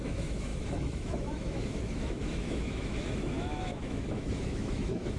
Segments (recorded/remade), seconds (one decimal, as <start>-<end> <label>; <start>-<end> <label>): 0.0-5.2 remade